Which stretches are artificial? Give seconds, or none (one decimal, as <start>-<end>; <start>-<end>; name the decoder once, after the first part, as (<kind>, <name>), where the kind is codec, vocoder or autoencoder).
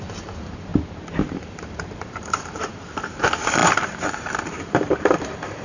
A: 0.0-0.7 (vocoder, BigVGAN v2); 1.3-5.6